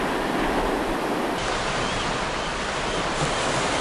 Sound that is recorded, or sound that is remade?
recorded